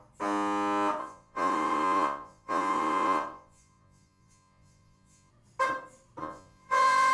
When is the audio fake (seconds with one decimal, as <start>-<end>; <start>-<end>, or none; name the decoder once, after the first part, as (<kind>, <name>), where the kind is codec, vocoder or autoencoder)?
1.0-5.3 (vocoder, Vocos); 6.2-7.1